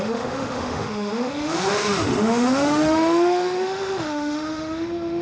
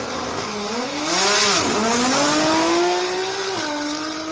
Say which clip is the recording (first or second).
second